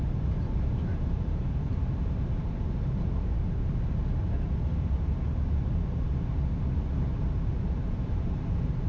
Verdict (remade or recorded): remade